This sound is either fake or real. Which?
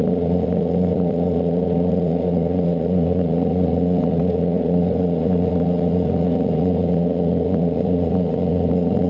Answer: fake